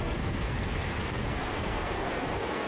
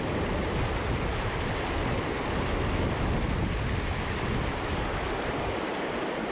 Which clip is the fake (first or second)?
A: first